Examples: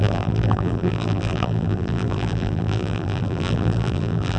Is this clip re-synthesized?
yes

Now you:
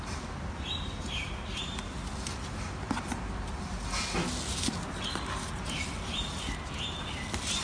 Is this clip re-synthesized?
no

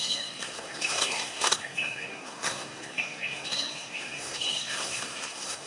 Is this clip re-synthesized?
yes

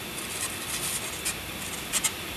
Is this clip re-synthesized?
no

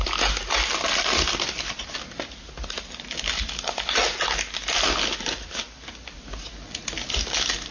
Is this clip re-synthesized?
no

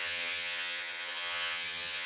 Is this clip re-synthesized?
yes